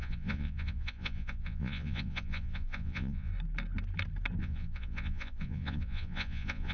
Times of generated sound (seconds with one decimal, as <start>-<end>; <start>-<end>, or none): 0.0-3.3; 4.4-6.7